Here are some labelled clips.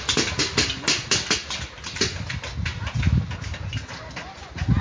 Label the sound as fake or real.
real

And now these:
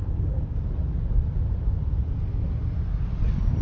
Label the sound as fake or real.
real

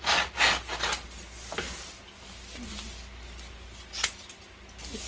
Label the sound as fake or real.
real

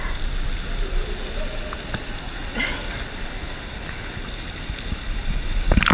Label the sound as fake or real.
real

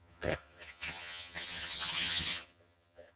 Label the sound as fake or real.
fake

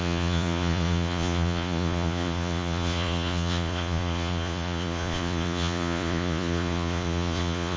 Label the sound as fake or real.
fake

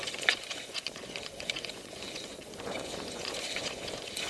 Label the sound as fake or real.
fake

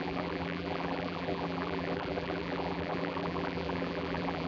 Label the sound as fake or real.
fake